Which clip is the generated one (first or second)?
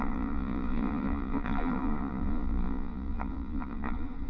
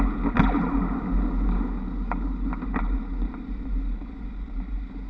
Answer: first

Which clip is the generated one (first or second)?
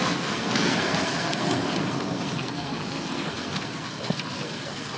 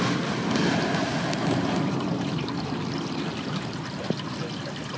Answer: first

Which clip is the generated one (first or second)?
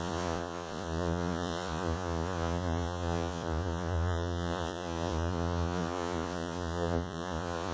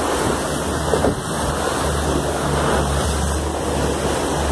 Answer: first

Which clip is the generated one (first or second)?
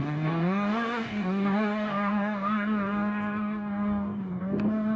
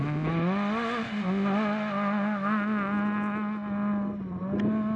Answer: first